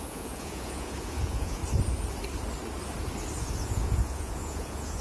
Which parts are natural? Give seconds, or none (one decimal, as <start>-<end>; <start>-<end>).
1.6-3.4